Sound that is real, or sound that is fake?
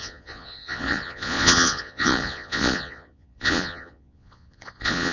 fake